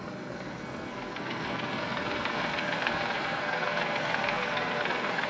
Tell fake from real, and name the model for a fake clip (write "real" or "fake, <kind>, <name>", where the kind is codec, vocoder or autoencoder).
fake, codec, SNAC